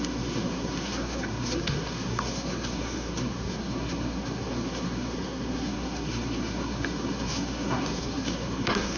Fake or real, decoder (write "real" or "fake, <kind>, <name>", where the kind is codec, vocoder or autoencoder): fake, codec, SNAC